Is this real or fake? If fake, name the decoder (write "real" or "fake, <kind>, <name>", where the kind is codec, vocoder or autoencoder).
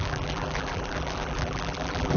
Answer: fake, vocoder, BigVGAN v2